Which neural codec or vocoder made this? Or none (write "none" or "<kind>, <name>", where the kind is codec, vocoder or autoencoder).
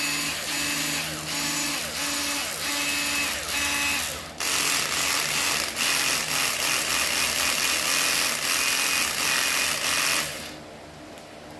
none